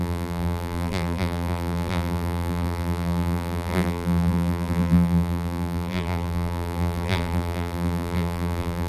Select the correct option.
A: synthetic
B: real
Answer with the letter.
A